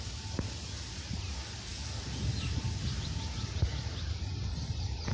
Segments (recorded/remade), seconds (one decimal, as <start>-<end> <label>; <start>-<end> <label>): 0.0-5.1 recorded